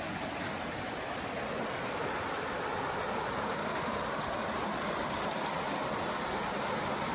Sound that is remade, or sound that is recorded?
recorded